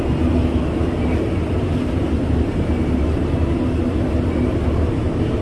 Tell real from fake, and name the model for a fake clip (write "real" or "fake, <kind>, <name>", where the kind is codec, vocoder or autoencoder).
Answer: real